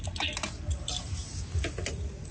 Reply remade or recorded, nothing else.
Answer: recorded